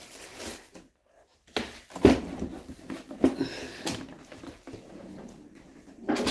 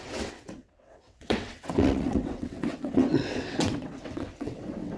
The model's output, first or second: second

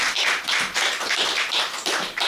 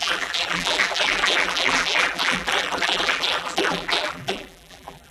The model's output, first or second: second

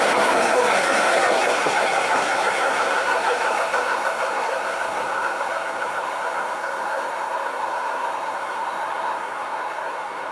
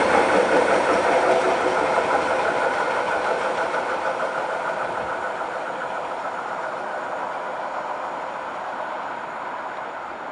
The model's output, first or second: first